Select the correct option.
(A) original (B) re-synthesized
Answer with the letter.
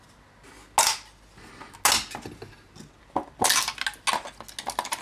A